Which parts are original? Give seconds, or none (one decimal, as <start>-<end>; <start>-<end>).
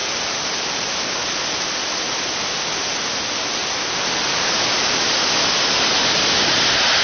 0.0-7.0